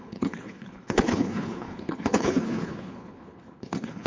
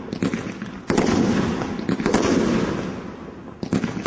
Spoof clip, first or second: first